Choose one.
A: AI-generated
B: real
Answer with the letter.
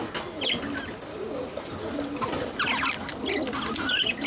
B